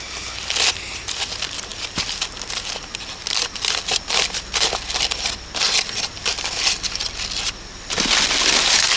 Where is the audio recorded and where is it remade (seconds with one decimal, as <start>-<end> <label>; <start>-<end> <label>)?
0.0-9.0 recorded